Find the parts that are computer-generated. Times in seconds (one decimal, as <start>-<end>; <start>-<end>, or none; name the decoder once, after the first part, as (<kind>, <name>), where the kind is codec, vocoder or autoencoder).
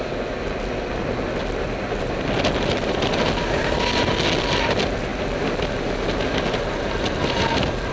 none